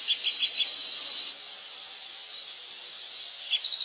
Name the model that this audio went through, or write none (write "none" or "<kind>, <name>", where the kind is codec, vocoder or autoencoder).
none